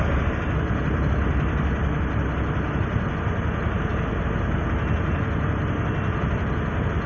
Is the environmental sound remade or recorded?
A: recorded